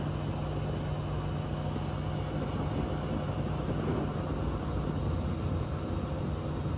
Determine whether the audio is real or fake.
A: real